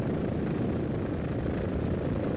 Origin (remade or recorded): recorded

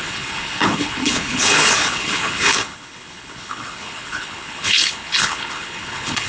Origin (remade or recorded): remade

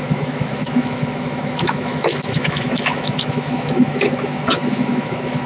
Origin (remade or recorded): remade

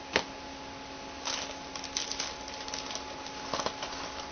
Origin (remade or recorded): recorded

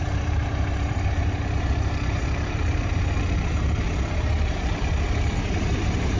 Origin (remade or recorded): remade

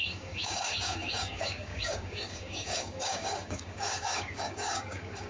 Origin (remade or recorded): remade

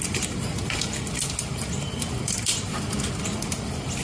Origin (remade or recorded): recorded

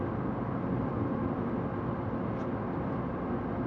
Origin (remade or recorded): recorded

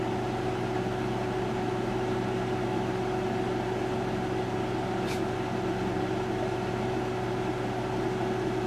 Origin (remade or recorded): recorded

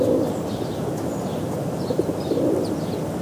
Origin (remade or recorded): recorded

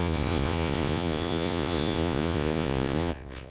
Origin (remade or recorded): remade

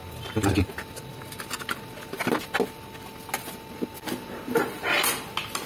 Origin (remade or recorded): recorded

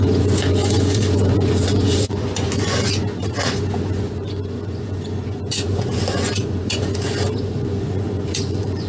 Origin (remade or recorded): remade